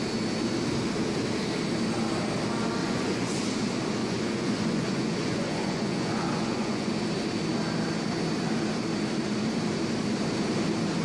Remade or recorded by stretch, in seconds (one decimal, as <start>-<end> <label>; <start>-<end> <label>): 0.0-2.8 recorded; 2.8-3.4 remade; 3.4-4.0 recorded; 4.0-6.9 remade; 6.9-11.0 recorded